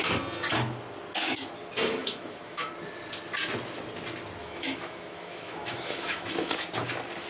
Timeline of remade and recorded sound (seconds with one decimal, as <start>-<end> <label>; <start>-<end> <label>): 0.0-2.0 recorded; 2.0-2.7 remade; 2.7-4.4 recorded; 4.4-6.5 remade; 6.5-7.3 recorded